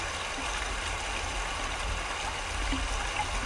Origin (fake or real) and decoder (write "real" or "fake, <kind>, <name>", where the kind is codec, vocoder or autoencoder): real